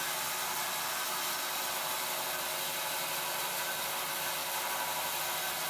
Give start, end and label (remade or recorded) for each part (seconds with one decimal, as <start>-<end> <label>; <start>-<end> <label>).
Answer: 0.0-5.7 recorded